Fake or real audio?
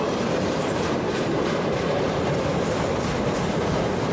fake